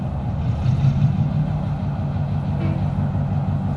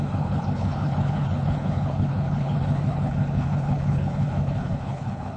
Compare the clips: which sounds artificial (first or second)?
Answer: second